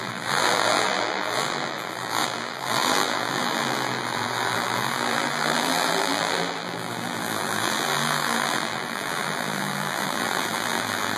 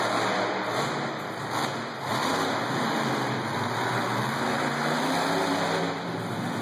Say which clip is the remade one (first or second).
first